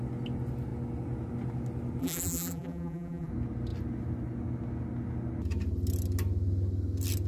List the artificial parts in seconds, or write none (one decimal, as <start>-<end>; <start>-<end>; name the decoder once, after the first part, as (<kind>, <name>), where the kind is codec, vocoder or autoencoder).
2.0-3.3 (vocoder, BigVGAN v2)